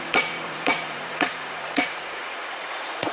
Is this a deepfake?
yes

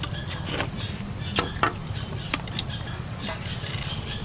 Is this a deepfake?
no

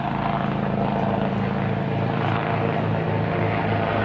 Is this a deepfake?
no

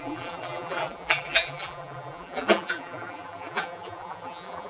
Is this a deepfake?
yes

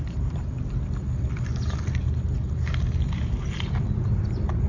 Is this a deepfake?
no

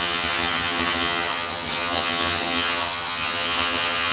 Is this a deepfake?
yes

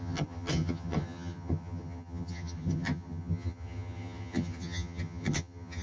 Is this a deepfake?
yes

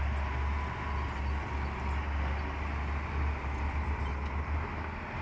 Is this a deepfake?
no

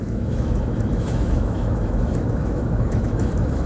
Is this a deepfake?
yes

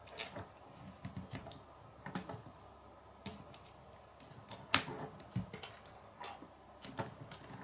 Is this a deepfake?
no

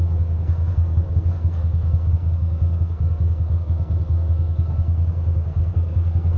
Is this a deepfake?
yes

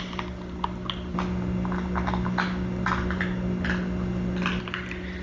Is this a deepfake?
no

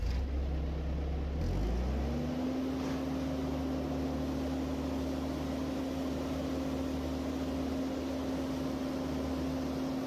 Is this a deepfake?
no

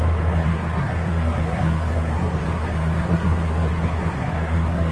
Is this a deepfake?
yes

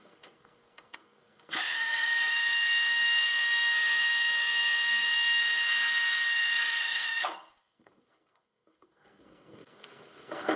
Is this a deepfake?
yes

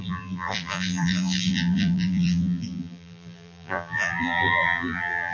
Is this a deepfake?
yes